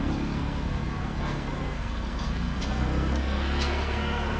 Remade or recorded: remade